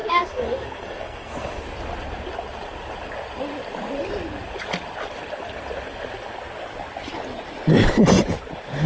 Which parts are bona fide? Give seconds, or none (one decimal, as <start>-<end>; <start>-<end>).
1.6-8.9